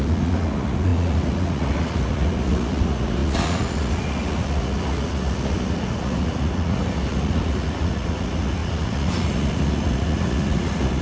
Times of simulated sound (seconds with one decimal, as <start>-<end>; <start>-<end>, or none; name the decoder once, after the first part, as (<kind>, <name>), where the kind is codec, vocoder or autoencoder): 0.0-11.0 (vocoder, Vocos)